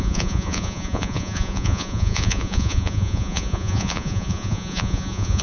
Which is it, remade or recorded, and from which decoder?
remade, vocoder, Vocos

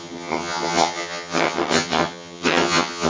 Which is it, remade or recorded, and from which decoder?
remade, vocoder, HiFi-GAN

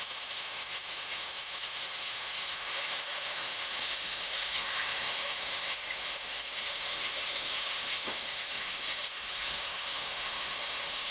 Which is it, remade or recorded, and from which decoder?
remade, autoencoder, DAC-VAE